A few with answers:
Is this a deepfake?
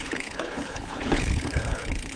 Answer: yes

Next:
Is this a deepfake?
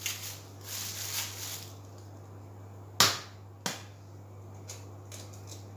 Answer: no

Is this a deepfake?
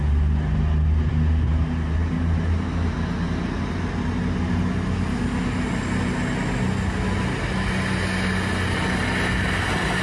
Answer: no